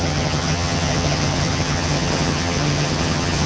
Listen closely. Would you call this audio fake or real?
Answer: fake